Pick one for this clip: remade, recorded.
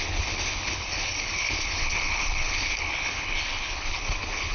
remade